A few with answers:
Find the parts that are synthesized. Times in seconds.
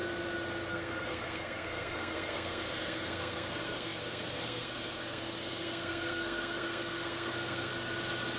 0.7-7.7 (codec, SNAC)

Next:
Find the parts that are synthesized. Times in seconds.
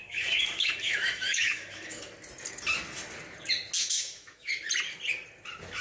0.0-2.0 (autoencoder, DAC-VAE); 3.8-4.5